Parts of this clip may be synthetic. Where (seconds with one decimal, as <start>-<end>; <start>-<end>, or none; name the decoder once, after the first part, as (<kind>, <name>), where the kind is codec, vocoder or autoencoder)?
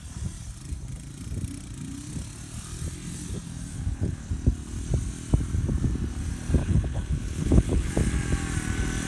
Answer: 3.7-4.3 (codec, HILCodec); 6.6-7.9